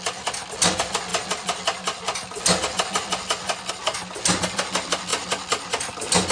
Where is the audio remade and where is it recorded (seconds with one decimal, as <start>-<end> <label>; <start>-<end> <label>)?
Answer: 0.0-6.3 recorded